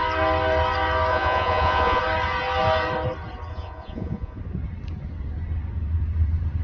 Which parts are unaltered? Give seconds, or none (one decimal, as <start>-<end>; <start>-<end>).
0.0-1.1; 2.0-3.5; 4.4-6.6